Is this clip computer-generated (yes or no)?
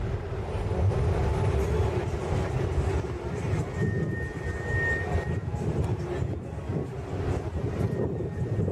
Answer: no